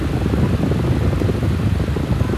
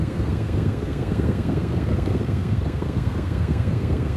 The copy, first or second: second